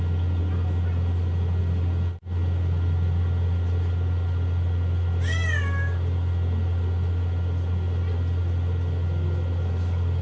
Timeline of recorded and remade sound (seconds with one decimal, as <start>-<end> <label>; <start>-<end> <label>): 0.0-10.2 recorded